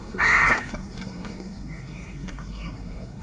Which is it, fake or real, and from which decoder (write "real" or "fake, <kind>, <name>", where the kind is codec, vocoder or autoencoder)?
fake, codec, SNAC